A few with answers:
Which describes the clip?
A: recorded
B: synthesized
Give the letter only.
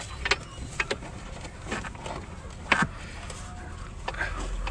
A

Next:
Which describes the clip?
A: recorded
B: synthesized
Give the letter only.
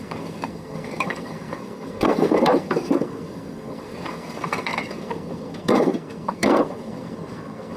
B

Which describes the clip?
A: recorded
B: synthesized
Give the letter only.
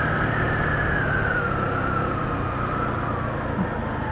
A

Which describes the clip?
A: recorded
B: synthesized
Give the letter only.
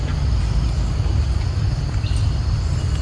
A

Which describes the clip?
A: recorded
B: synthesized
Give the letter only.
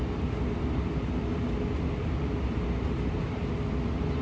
A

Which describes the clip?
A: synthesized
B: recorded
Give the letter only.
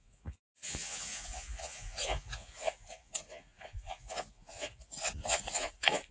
A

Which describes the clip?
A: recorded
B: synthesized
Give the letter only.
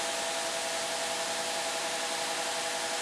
A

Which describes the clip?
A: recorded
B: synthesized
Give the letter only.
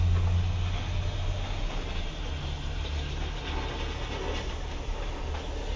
A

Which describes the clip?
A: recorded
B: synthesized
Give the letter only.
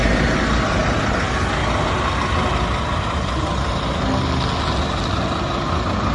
A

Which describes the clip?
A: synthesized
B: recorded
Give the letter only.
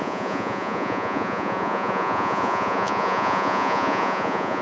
A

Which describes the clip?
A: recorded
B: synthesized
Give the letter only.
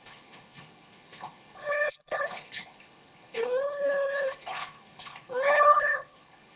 B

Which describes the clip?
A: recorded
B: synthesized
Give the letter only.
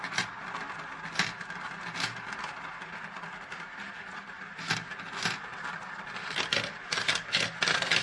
A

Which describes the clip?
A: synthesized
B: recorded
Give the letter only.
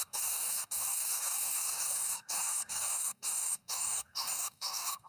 A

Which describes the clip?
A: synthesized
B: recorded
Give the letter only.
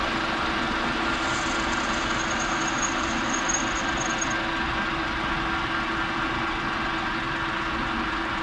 B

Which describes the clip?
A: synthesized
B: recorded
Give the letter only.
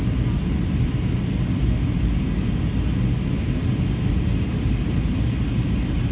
B